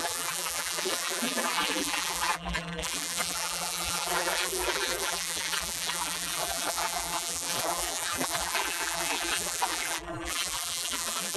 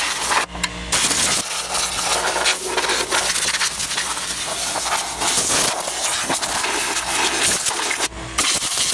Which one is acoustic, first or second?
second